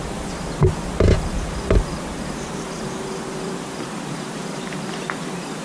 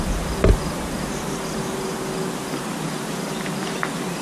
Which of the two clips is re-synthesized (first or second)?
first